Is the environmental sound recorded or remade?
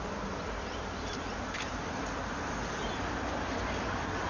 remade